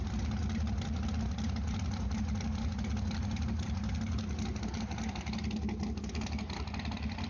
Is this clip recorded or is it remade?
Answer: recorded